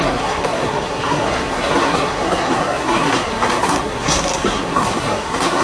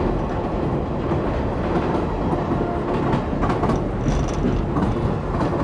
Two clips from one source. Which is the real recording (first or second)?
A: second